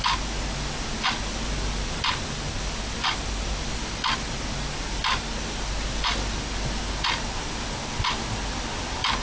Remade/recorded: recorded